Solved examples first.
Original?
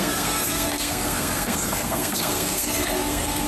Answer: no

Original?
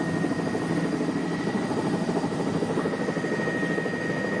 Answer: yes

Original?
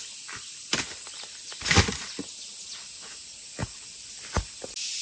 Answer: yes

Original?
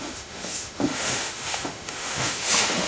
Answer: no